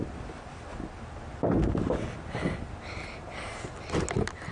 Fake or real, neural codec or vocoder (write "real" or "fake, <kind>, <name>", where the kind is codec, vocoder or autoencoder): real